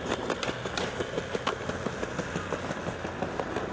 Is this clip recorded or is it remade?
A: recorded